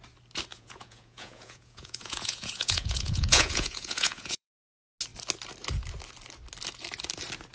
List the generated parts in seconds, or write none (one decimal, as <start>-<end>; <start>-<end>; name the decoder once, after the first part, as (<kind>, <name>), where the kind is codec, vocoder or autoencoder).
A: 0.5-4.5 (vocoder, Vocos)